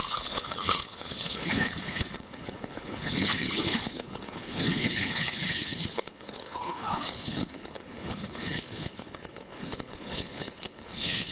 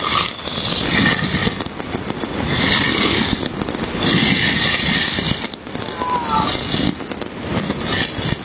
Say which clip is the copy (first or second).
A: first